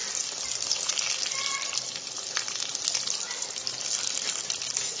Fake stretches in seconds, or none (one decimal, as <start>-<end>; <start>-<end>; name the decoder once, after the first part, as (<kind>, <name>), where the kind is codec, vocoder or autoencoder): none